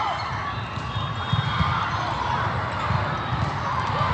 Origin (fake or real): real